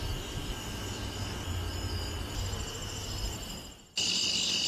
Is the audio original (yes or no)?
yes